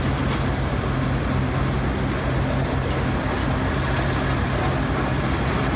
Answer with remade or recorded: recorded